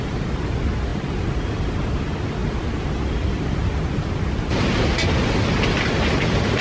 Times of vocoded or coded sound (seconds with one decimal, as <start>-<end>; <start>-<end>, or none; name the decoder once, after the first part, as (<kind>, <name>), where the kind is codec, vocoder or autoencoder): none